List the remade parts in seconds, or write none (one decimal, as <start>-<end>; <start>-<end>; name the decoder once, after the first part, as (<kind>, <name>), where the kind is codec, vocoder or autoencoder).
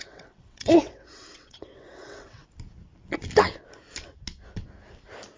0.0-2.4 (vocoder, WaveNeXt)